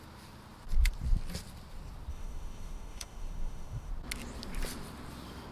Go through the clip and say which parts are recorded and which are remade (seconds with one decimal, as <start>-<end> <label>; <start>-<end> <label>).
0.0-2.1 recorded; 2.1-3.9 remade; 3.9-5.5 recorded